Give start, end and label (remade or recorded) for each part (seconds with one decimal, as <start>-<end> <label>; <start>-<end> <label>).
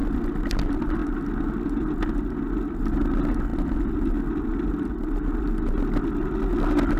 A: 0.0-3.5 recorded; 3.5-4.9 remade; 4.9-7.0 recorded